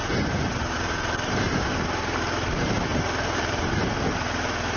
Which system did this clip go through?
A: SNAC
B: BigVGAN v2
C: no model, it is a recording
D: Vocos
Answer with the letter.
C